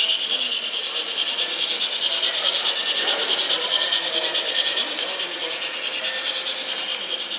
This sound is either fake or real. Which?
real